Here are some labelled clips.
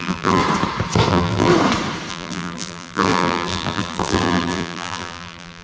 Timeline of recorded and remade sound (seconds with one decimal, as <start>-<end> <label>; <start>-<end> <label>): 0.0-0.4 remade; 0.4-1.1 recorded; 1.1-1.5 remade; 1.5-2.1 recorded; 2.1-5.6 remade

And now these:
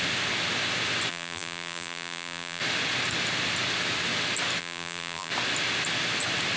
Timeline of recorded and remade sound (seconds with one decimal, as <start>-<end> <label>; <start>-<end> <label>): 0.0-1.1 recorded; 1.1-2.6 remade; 2.6-4.6 recorded; 4.6-5.3 remade; 5.3-6.6 recorded

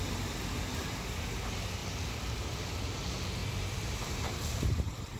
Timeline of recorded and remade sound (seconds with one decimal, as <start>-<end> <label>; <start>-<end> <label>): 0.0-3.4 recorded; 3.4-5.2 remade

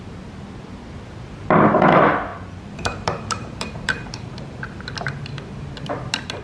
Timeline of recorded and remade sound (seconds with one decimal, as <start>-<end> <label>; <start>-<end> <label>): 0.0-2.3 recorded; 2.3-4.6 remade; 4.6-6.4 recorded

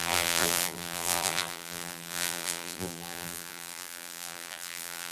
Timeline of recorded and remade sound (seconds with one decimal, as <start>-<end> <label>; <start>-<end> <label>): 0.0-5.1 remade

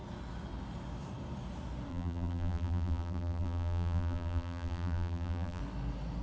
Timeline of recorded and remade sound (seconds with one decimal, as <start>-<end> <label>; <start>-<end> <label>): 0.0-1.9 recorded; 1.9-5.6 remade; 5.6-6.2 recorded